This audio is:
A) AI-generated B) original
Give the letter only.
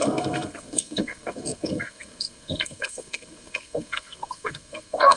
A